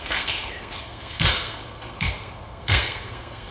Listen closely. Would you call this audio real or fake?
fake